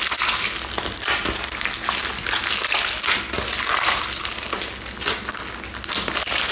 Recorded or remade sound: recorded